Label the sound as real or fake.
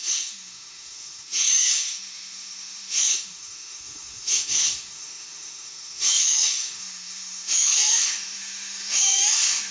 fake